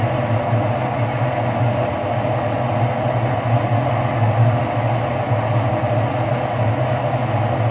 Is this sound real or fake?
real